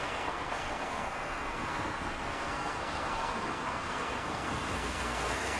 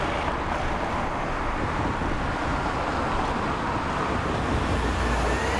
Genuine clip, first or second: second